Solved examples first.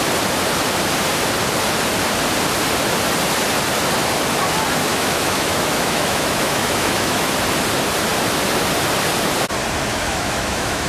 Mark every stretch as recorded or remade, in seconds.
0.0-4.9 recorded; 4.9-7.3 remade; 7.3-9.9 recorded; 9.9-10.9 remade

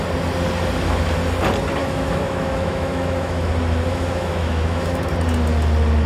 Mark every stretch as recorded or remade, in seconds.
0.0-1.8 recorded; 1.8-3.5 remade; 3.5-3.9 recorded; 3.9-5.1 remade; 5.1-6.1 recorded